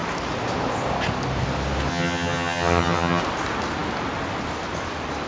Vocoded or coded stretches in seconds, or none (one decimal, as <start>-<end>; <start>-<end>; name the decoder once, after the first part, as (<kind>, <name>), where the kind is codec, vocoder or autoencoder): 1.9-3.2 (vocoder, HiFi-GAN)